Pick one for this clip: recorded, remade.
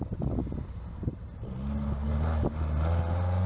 recorded